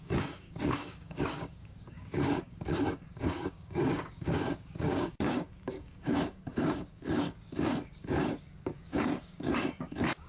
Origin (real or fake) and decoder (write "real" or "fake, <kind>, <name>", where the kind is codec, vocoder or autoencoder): fake, codec, DAC